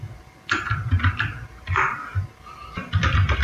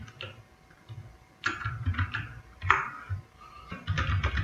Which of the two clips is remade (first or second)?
first